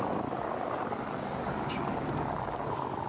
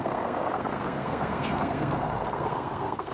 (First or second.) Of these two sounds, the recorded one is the first